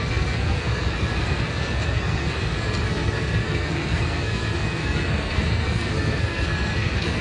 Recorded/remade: remade